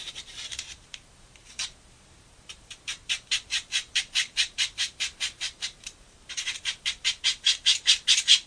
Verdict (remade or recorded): remade